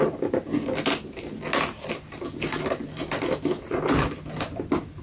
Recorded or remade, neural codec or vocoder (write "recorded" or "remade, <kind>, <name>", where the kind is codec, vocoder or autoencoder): recorded